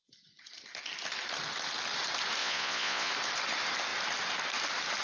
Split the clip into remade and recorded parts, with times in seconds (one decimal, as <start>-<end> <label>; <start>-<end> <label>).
0.0-2.4 recorded; 2.4-3.1 remade; 3.1-5.0 recorded